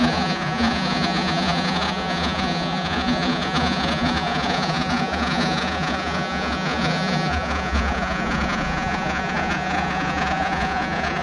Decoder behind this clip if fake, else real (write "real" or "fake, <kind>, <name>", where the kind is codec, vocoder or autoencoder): fake, vocoder, Vocos